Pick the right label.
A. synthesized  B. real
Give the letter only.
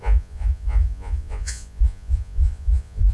A